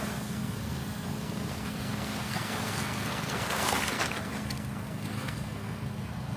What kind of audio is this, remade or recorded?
remade